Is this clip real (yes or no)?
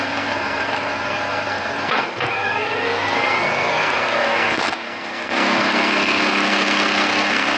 no